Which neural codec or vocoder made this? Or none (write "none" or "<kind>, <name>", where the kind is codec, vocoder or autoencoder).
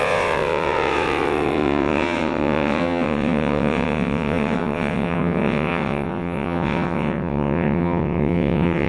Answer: vocoder, WaveNeXt